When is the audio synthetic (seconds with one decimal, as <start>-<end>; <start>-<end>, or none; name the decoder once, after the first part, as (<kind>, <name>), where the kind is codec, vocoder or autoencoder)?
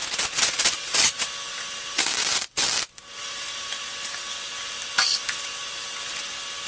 0.0-1.2 (vocoder, BigVGAN v2); 3.2-3.9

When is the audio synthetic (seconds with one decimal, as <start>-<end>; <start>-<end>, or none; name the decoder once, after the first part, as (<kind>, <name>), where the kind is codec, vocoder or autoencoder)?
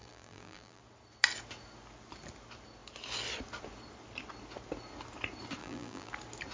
0.0-0.8 (vocoder, BigVGAN v2); 5.6-6.1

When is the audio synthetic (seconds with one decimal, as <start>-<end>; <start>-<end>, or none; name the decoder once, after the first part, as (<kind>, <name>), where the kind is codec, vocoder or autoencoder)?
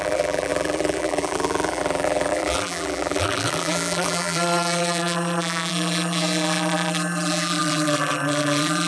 0.0-8.9 (vocoder, BigVGAN v2)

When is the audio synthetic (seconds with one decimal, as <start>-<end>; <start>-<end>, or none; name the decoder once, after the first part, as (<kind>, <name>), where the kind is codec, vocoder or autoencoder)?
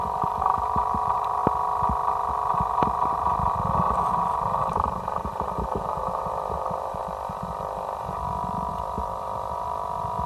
0.0-1.4 (vocoder, BigVGAN v2); 2.3-7.0; 8.7-10.3